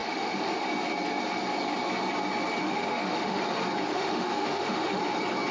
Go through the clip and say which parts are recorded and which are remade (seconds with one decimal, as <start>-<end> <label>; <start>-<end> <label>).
0.0-0.5 remade; 0.5-2.6 recorded; 2.6-3.4 remade; 3.4-3.9 recorded; 3.9-5.0 remade; 5.0-5.5 recorded